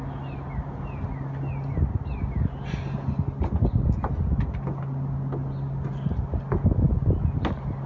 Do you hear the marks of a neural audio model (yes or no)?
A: no